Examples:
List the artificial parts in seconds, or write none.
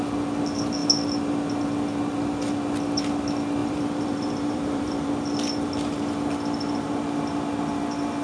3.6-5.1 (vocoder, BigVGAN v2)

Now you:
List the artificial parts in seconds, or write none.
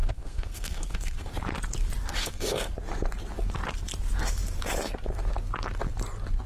0.0-1.3 (codec, SNAC); 2.2-2.7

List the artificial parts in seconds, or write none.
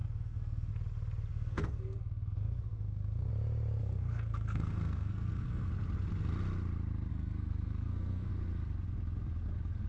0.0-0.7 (codec, SNAC); 1.3-3.3; 3.8-5.7; 7.1-8.3